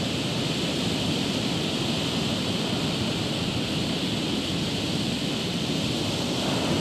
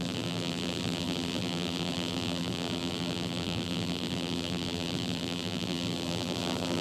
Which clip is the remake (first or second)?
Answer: second